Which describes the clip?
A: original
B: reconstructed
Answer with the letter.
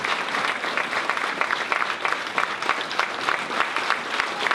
A